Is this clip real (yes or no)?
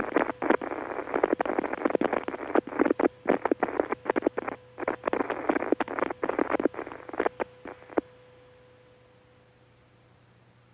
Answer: yes